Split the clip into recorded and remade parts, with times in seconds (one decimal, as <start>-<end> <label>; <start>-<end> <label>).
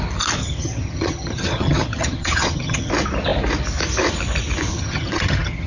0.0-0.4 recorded; 0.4-2.9 remade; 2.9-4.7 recorded; 4.7-5.7 remade